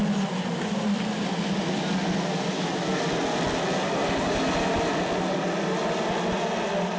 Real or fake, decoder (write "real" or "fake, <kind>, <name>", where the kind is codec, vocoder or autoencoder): real